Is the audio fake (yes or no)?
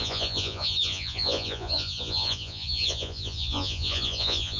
yes